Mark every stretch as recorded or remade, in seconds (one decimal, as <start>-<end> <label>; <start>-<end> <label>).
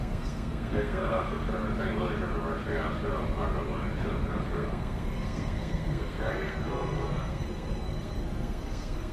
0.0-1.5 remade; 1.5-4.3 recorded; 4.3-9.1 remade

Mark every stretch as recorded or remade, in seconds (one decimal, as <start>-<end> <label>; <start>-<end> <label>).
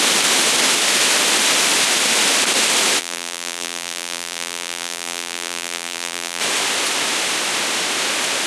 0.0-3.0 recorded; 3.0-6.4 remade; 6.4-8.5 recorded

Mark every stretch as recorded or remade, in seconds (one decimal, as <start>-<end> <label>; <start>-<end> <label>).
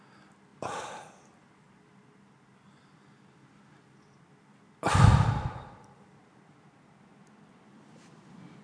0.0-8.6 recorded